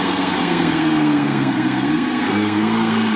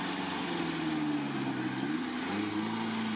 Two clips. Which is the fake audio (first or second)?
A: first